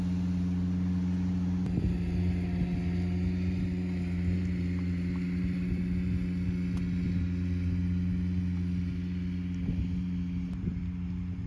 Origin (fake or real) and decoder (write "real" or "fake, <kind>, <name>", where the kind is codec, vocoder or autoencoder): real